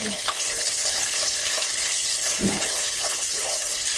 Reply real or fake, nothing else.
fake